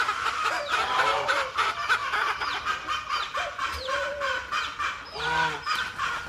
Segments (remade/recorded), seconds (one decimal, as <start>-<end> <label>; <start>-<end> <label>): 0.0-6.3 recorded